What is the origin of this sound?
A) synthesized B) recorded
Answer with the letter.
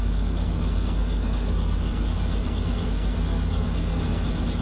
A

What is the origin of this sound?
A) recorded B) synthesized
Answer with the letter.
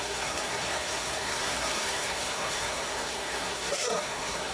B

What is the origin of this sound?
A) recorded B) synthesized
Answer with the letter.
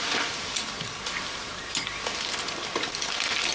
A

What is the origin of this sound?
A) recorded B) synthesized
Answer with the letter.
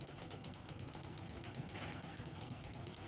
B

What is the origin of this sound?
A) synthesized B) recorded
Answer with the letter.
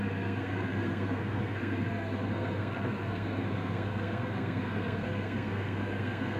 A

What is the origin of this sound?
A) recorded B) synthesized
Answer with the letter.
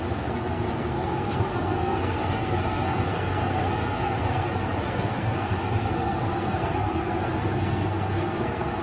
B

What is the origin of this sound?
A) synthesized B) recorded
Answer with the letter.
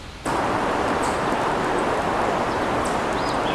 B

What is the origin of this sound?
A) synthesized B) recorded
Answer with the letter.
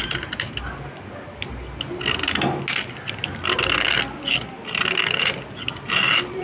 B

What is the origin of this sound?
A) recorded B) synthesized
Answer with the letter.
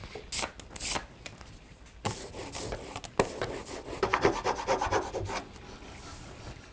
A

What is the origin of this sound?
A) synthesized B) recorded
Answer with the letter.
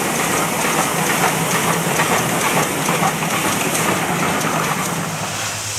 B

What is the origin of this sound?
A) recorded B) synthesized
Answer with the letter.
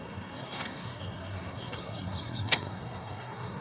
B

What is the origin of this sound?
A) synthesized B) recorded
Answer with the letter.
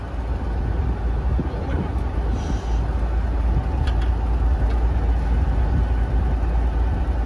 B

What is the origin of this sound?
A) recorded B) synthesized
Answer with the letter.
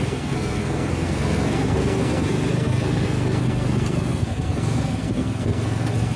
B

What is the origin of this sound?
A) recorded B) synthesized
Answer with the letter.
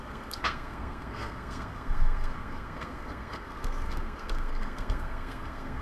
B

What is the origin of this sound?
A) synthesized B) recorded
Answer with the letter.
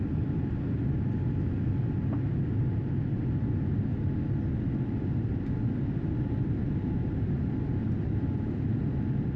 B